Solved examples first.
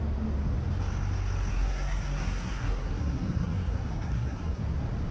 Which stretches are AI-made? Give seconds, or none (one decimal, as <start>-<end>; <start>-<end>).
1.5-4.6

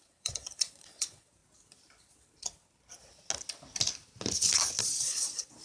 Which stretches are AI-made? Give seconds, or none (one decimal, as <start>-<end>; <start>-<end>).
0.0-1.4; 4.8-5.6

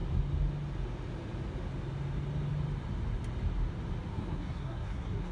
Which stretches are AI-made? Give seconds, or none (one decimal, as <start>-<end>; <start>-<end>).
4.1-5.3

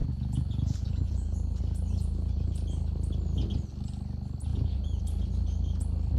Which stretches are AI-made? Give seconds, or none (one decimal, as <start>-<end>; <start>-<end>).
0.0-1.6; 2.0-2.5; 4.5-5.0

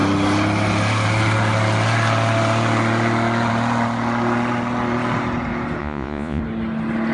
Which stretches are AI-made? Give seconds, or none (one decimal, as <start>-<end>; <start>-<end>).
5.8-6.4